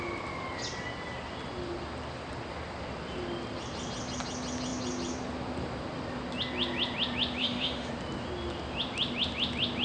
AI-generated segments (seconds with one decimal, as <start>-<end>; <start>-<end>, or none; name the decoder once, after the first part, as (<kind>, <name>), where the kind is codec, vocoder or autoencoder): 7.4-7.9 (autoencoder, DAC-VAE)